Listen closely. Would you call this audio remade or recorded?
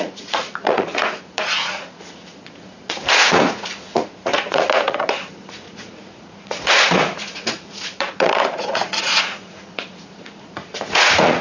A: remade